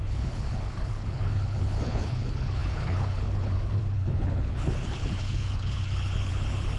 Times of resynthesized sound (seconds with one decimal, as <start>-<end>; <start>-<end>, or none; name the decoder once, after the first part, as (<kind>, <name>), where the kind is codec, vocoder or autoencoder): 0.0-6.8 (codec, HILCodec)